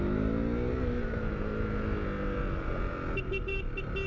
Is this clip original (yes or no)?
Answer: yes